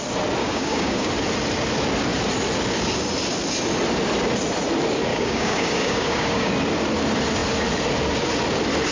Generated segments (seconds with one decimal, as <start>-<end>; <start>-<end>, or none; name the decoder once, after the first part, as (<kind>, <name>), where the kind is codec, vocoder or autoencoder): 0.4-1.1 (codec, DAC); 5.1-6.5